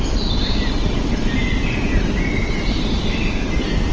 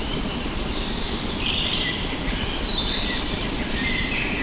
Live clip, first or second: first